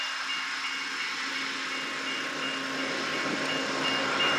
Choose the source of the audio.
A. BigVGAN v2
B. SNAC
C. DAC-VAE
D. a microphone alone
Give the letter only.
D